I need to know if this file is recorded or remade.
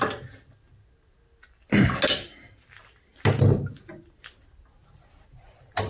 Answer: recorded